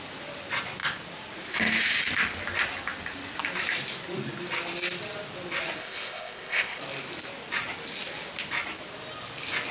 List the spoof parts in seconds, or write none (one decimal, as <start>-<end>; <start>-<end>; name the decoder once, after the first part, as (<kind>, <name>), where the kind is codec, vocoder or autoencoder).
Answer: 5.8-6.8 (codec, ZipCodec)